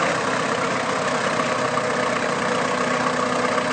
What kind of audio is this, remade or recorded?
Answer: recorded